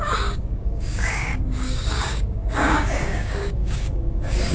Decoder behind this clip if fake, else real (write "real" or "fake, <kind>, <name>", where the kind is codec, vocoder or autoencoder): fake, codec, DAC